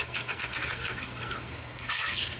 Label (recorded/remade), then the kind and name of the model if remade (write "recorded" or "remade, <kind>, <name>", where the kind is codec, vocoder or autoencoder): remade, codec, SNAC